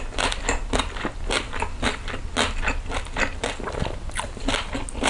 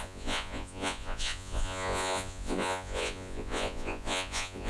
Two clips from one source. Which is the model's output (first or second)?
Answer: second